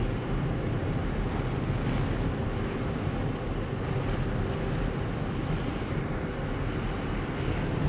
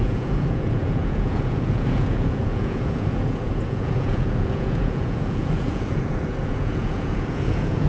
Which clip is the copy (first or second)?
second